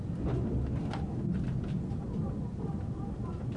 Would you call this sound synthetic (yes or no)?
no